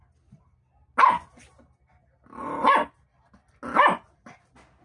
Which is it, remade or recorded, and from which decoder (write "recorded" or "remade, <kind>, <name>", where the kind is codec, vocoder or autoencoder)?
recorded